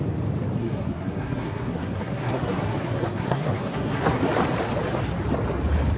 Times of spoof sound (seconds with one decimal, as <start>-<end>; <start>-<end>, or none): 0.6-4.2